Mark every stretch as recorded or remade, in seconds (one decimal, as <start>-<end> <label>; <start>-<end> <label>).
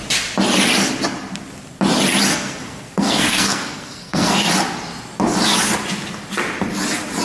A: 0.0-2.3 recorded; 2.3-4.5 remade; 4.5-7.2 recorded